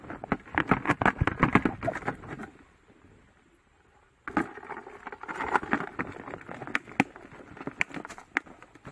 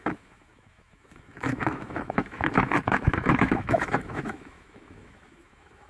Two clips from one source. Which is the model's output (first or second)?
second